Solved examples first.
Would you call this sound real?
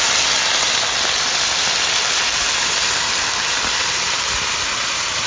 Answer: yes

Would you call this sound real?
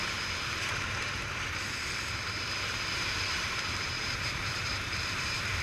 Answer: no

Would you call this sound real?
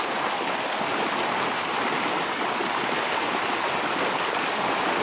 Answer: yes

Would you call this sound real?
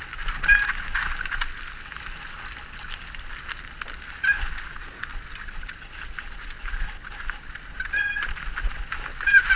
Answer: yes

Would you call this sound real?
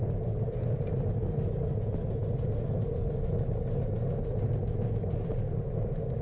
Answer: yes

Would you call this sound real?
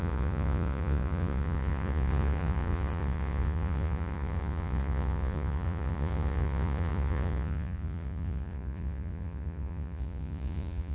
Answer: no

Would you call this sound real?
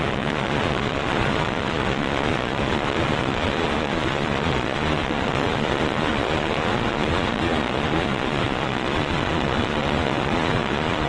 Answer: no